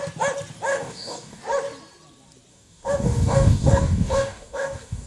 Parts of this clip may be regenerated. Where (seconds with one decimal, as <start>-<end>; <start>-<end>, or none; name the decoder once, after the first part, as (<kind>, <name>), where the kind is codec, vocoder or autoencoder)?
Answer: 0.7-1.4 (codec, DAC); 2.5-5.1